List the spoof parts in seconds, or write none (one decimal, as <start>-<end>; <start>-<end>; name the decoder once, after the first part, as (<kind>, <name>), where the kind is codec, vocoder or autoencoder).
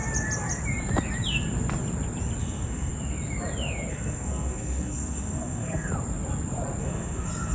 2.4-2.9 (codec, SNAC); 3.9-5.9; 6.8-7.5